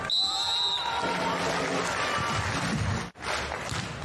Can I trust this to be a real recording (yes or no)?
yes